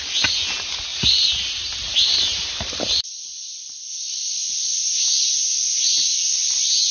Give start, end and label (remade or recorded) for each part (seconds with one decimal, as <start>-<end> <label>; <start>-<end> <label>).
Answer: 0.0-0.9 recorded; 0.9-3.6 remade; 3.6-4.3 recorded; 4.3-4.9 remade; 4.9-6.9 recorded